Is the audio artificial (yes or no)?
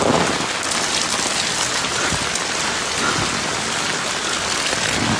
no